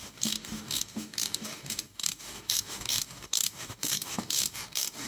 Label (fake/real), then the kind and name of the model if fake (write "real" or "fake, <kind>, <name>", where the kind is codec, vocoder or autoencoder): fake, codec, DAC